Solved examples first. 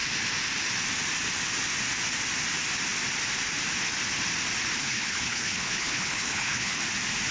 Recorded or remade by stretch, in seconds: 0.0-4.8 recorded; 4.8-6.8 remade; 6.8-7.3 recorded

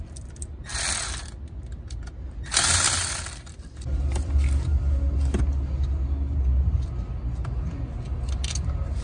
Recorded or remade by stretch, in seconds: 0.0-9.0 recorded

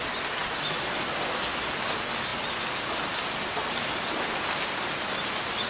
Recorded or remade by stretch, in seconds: 0.0-5.7 recorded

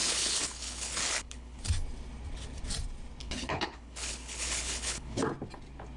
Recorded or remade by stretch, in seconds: 0.0-1.6 remade; 1.6-3.2 recorded; 3.2-5.2 remade; 5.2-6.0 recorded

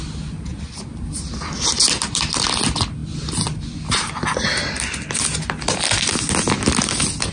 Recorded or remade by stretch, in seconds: 0.0-7.3 recorded

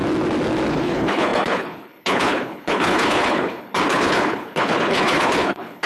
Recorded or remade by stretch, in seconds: 0.0-0.7 recorded; 0.7-5.9 remade

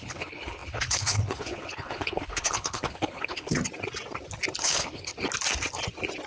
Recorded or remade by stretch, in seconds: 0.0-3.6 remade; 3.6-4.6 recorded; 4.6-5.1 remade; 5.1-6.3 recorded

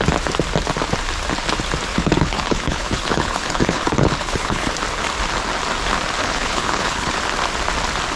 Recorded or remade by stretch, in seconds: 0.0-1.9 recorded; 1.9-4.7 remade; 4.7-6.2 recorded; 6.2-7.2 remade; 7.2-8.2 recorded